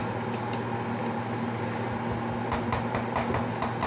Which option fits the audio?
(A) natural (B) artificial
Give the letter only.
A